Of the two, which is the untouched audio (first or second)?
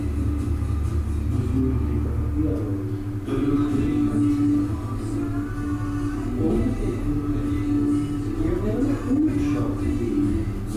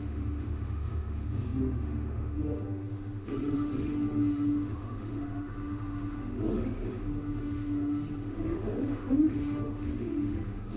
first